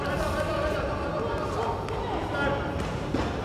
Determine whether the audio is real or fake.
real